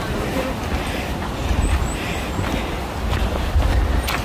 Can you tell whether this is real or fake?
real